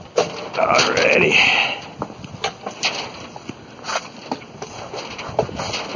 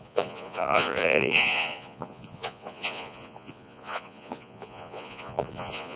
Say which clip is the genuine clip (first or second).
first